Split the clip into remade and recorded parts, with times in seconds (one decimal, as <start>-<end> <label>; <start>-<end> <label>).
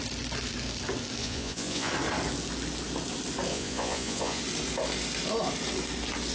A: 0.0-1.2 recorded; 1.2-1.9 remade; 1.9-3.5 recorded; 3.5-4.4 remade; 4.4-6.3 recorded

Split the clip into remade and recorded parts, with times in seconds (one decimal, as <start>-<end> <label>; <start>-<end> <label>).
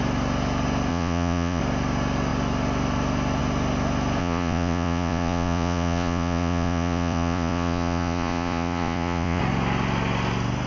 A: 0.0-0.9 recorded; 0.9-1.6 remade; 1.6-4.2 recorded; 4.2-9.4 remade; 9.4-10.7 recorded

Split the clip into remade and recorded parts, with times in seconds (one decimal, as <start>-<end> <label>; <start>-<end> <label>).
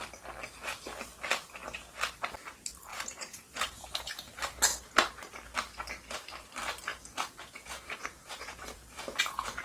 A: 0.0-2.9 recorded; 2.9-4.3 remade; 4.3-6.9 recorded; 6.9-9.6 remade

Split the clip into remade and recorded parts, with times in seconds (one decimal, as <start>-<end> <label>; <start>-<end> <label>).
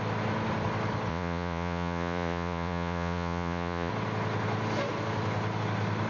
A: 0.0-1.1 recorded; 1.1-3.9 remade; 3.9-6.1 recorded